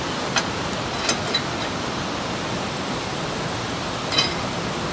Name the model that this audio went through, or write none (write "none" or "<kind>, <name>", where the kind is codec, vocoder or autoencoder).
none